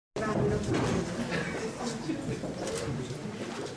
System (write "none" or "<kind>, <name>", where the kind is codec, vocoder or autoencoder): none